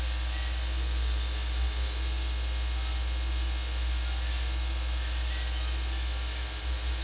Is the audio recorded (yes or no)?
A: yes